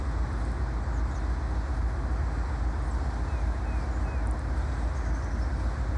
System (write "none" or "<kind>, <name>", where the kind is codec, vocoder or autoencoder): none